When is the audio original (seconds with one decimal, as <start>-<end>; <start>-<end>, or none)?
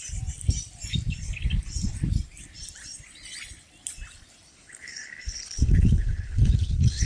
0.0-4.5